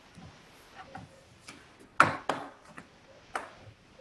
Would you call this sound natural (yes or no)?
yes